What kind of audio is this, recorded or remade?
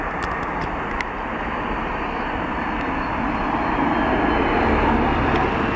recorded